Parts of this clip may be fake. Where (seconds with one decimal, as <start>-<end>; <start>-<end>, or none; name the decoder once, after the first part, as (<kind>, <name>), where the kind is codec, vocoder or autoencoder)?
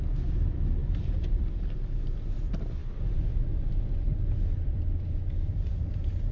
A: 0.0-6.3 (vocoder, BigVGAN v2)